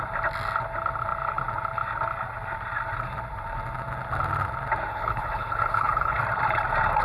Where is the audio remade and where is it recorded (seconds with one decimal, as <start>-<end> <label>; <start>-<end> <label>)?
0.0-4.9 recorded; 4.9-6.2 remade; 6.2-7.0 recorded